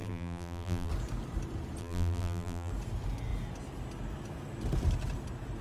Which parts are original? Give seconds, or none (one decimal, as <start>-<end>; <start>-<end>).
0.9-1.8; 2.7-5.6